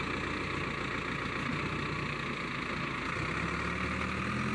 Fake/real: real